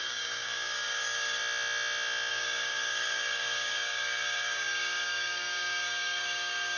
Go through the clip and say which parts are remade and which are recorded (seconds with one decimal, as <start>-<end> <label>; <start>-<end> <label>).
0.0-1.4 remade; 1.4-2.3 recorded; 2.3-6.8 remade